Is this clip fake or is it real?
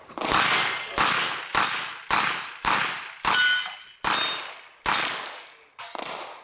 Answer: real